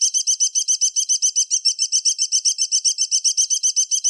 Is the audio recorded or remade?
recorded